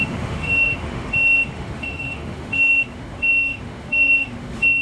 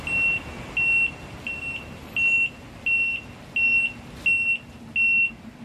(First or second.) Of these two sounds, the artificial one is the first